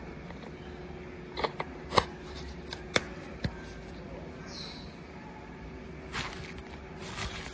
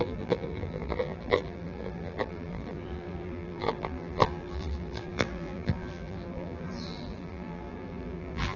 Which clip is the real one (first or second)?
first